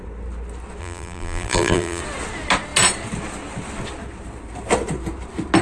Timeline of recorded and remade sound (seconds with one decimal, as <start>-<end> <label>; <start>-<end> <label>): 0.0-0.8 recorded; 0.8-2.0 remade; 2.0-5.6 recorded